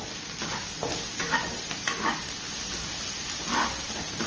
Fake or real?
real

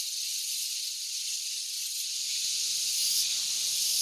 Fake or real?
real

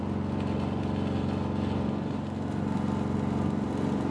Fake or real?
real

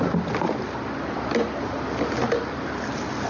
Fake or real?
real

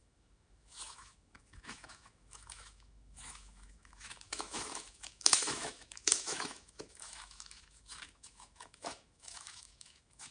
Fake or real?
fake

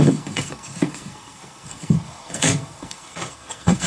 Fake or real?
fake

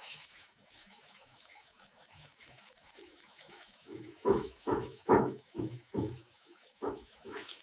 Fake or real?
fake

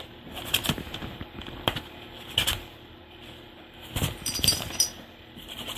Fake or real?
fake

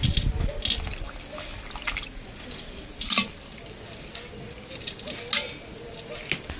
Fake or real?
real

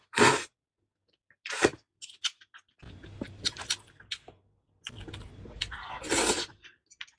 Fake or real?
real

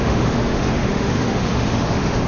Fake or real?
fake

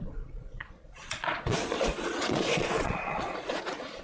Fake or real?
fake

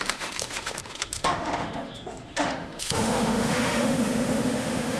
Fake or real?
fake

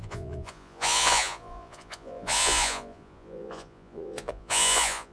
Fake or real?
fake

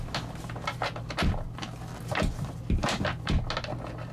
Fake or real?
real